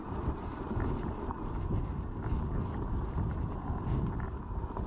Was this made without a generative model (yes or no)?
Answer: yes